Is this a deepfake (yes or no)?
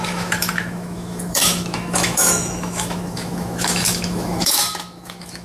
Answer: yes